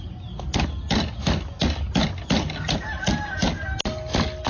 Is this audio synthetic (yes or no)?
no